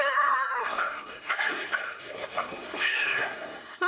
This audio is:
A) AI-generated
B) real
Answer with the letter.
A